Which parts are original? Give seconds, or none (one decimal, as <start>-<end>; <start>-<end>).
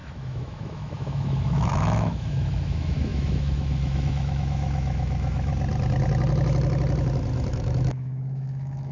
5.5-7.5